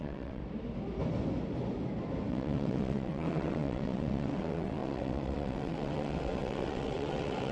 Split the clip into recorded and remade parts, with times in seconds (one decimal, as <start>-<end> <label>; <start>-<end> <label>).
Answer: 0.0-0.4 remade; 0.4-2.3 recorded; 2.3-7.5 remade